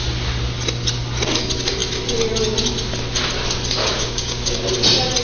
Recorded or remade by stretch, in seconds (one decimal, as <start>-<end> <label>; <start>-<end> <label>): 0.0-3.8 recorded; 3.8-4.5 remade; 4.5-5.2 recorded